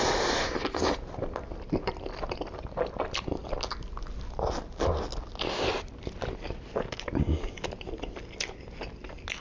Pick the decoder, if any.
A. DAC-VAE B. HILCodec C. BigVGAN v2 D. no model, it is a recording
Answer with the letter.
D